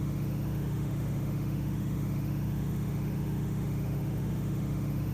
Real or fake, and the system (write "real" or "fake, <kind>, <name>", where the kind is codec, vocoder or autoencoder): fake, autoencoder, DAC-VAE